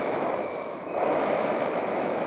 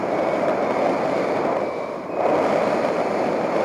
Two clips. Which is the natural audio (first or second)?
second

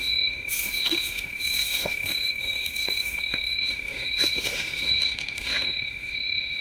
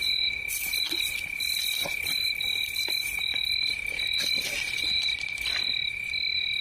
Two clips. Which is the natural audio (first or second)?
second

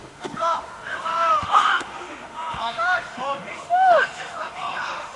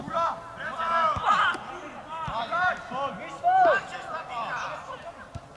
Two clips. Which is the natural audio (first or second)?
second